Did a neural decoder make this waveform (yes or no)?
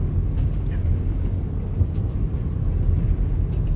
no